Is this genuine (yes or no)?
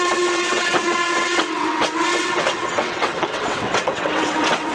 no